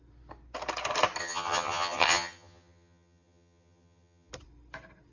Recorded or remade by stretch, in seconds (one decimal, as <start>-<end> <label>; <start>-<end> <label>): 0.0-1.2 recorded; 1.2-4.3 remade; 4.3-5.1 recorded